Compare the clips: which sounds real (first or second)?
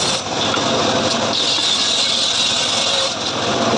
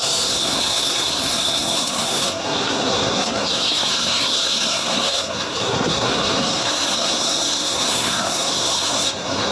first